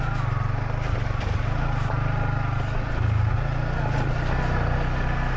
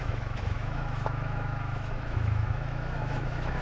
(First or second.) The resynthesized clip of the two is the second